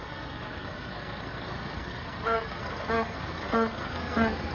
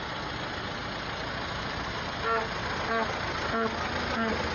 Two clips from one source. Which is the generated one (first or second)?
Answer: first